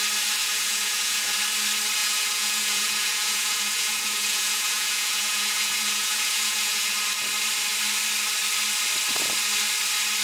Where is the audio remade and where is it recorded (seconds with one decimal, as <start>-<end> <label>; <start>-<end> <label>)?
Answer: 0.0-0.4 recorded; 0.4-1.4 remade; 1.4-2.0 recorded; 2.0-6.9 remade; 6.9-10.2 recorded